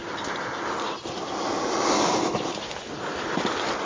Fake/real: real